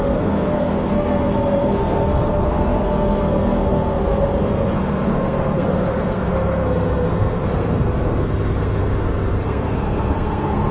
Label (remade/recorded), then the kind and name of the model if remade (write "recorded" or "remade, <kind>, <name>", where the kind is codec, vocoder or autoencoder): remade, codec, SNAC